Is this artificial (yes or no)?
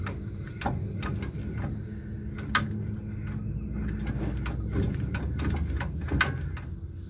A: no